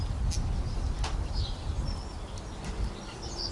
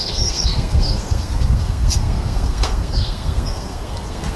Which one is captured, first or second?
first